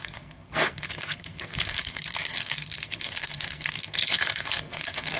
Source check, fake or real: fake